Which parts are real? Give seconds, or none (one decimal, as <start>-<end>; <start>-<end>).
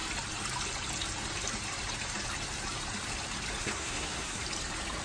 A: 0.0-3.6; 4.4-5.0